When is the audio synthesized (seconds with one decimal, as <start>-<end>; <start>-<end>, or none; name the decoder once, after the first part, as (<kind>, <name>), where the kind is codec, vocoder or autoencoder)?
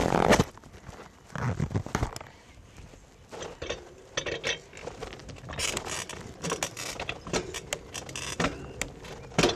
0.0-0.7 (vocoder, BigVGAN v2)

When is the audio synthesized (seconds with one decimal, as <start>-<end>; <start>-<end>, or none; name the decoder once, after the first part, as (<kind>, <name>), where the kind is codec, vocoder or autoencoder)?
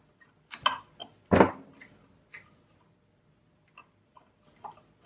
none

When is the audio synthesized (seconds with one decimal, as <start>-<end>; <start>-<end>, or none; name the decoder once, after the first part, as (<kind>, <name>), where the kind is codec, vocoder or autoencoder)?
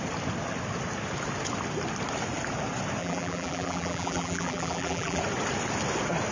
3.0-5.2 (vocoder, BigVGAN v2)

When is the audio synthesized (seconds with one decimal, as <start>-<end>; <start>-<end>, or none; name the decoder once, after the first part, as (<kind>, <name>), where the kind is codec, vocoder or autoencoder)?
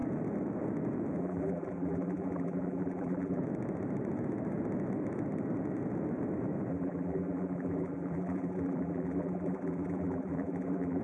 1.2-3.4 (vocoder, BigVGAN v2); 6.7-11.0